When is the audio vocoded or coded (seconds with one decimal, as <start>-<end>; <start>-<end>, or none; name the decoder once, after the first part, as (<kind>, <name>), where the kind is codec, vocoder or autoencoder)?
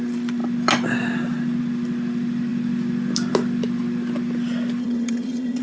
4.8-5.6 (vocoder, HiFi-GAN)